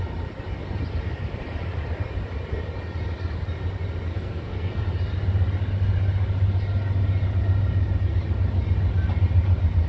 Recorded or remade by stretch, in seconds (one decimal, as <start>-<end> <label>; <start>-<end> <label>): 0.0-4.1 recorded; 4.1-4.8 remade; 4.8-9.9 recorded